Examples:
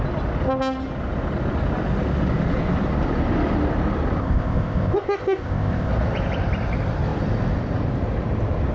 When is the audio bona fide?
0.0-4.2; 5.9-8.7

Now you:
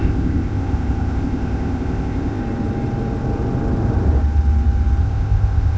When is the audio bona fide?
2.4-5.0

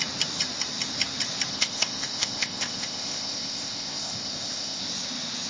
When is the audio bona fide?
0.0-1.5; 4.8-5.5

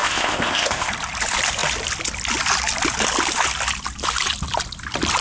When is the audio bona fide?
0.9-5.2

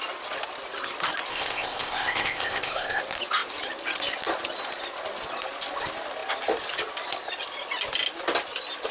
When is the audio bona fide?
0.0-1.3; 3.0-8.9

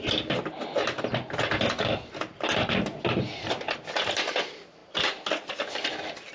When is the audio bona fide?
0.0-6.3

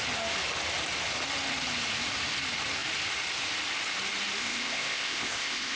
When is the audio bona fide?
0.0-4.4